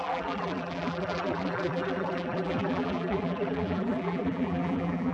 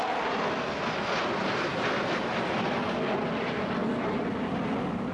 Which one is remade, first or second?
first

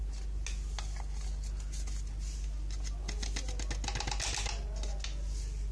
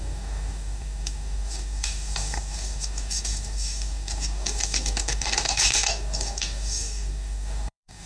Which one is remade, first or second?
second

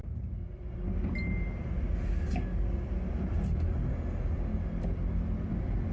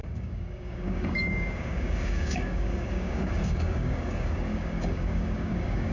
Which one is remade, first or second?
second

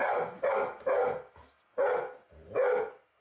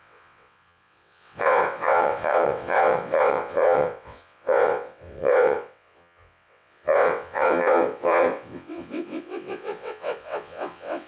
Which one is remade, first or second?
second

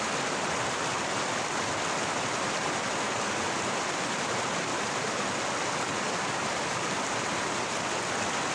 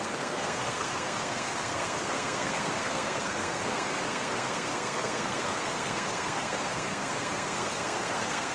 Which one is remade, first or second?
second